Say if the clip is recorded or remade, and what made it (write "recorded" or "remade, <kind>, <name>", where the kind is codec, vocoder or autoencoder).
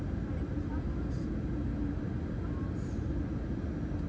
recorded